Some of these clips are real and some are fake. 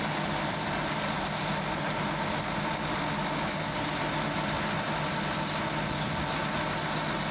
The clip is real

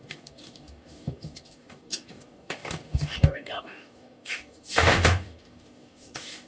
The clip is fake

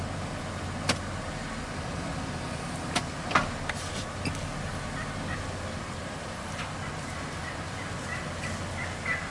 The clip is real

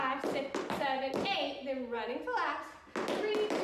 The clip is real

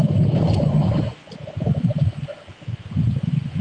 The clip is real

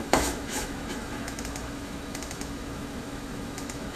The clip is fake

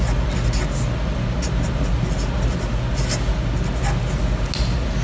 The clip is real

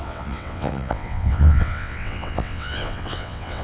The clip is fake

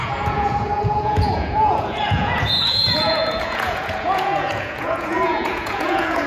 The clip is fake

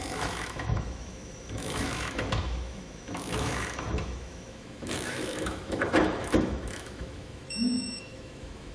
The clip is fake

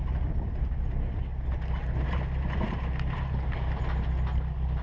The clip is real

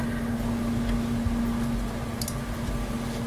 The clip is real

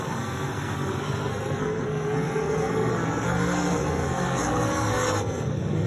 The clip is fake